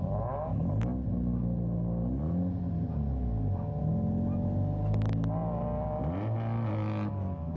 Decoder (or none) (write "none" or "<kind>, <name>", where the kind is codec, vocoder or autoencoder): none